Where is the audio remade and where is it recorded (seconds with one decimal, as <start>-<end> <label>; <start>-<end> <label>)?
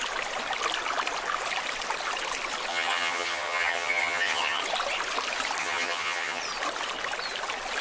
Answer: 0.0-2.7 recorded; 2.7-4.6 remade; 4.6-5.6 recorded; 5.6-6.4 remade; 6.4-7.8 recorded